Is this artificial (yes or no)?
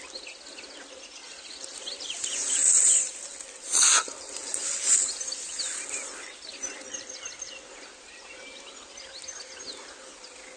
no